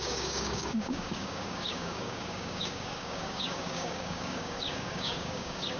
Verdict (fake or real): fake